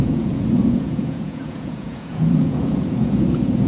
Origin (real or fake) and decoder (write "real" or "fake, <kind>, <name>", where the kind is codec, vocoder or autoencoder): fake, vocoder, Vocos